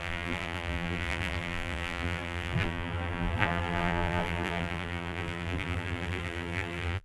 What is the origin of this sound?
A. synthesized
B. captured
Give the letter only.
A